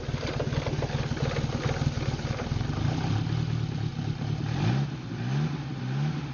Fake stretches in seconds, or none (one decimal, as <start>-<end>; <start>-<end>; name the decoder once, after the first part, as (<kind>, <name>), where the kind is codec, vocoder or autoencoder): none